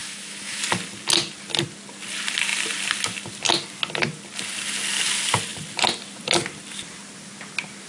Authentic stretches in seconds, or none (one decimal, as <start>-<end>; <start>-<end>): 0.6-7.9